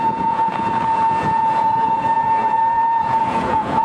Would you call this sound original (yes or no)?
no